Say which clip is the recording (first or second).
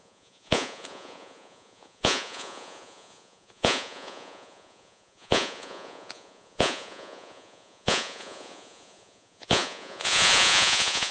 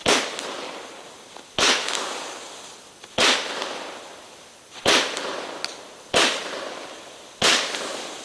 second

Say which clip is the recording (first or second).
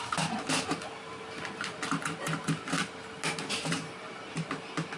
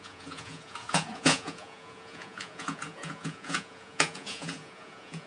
first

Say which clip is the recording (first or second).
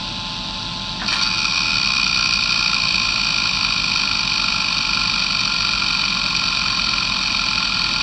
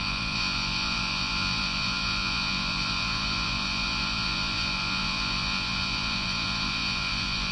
first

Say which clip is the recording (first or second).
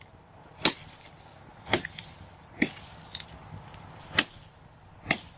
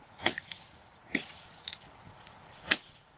first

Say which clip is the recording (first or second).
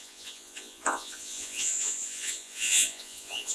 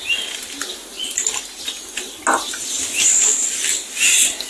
second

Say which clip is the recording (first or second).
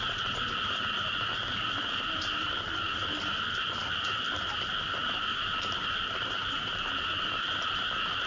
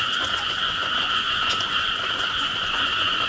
first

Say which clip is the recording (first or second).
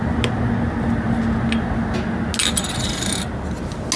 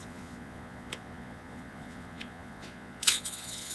first